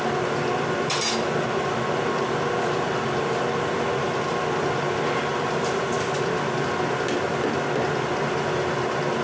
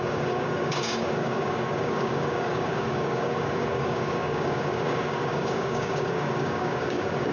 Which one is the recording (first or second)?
first